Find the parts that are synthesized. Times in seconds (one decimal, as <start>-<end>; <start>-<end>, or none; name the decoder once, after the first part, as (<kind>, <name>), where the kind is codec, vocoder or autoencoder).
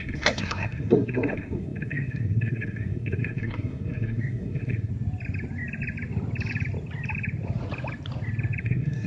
0.0-4.9 (codec, SNAC); 8.6-9.1